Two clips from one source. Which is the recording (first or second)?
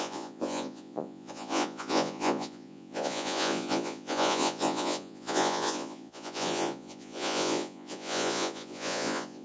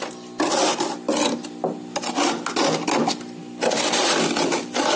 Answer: second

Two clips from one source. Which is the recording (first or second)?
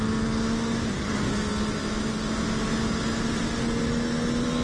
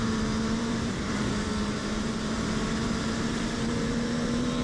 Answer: first